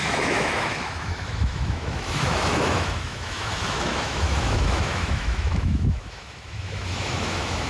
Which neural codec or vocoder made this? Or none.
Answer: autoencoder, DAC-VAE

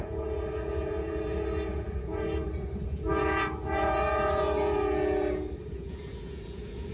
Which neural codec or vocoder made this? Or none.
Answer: vocoder, Vocos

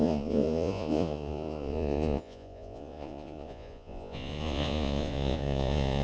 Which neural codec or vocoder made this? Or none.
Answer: vocoder, Vocos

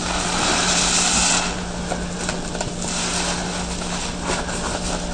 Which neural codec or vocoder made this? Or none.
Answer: none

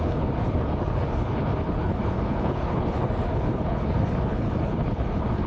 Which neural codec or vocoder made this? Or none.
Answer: codec, HILCodec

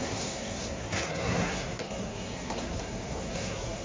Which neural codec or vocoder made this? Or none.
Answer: codec, SNAC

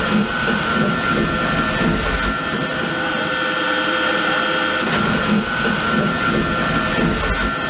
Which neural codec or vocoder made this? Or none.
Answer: none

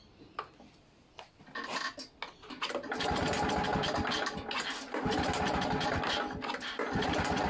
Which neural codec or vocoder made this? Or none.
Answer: none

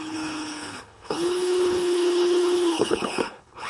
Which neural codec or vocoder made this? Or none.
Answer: codec, HILCodec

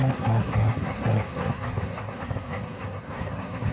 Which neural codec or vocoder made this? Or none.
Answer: codec, SNAC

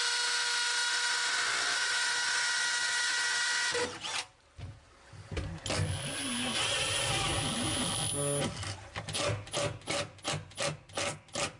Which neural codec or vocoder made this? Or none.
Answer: none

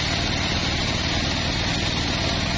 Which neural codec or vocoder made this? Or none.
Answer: none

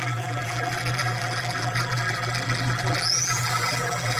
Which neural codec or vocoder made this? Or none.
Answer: vocoder, BigVGAN v2